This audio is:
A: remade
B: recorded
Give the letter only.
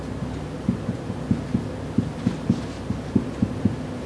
B